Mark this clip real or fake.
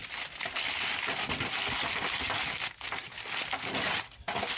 real